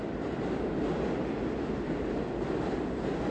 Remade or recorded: recorded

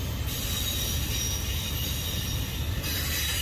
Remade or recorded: recorded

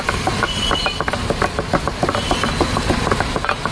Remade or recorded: recorded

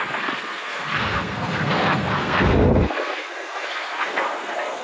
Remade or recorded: remade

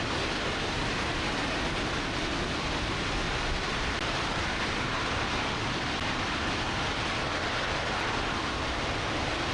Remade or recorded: recorded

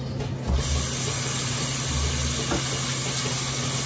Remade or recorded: recorded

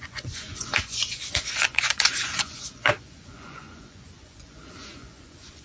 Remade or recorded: remade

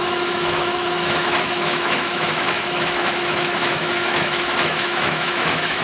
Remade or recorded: remade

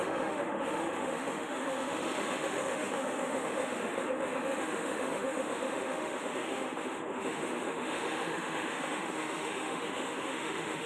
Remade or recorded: remade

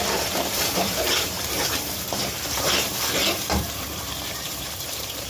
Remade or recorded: remade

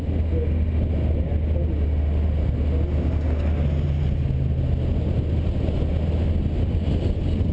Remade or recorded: recorded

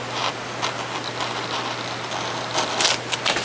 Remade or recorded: recorded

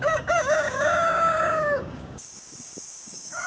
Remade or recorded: remade